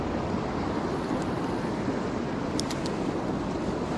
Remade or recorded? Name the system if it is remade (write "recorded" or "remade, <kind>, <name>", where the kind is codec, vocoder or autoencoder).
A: recorded